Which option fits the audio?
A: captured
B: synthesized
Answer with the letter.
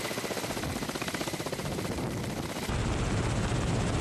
A